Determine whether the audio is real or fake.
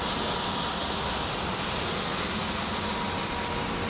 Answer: real